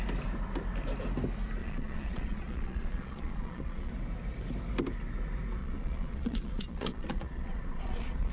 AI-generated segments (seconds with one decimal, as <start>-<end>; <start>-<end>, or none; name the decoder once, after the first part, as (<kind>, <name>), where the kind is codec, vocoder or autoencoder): 1.6-3.9 (vocoder, Vocos); 5.6-8.3